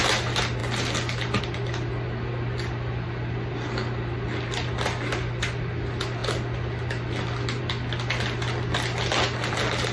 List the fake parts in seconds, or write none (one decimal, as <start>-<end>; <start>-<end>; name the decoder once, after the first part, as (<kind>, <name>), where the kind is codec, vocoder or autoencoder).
none